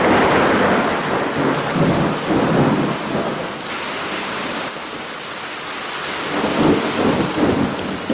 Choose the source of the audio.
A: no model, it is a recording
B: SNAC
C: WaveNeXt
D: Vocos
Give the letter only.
A